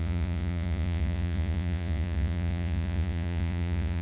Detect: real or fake fake